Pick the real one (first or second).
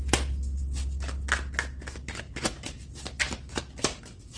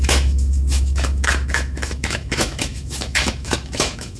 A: first